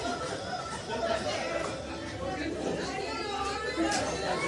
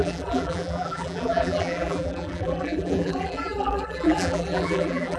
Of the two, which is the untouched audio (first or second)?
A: first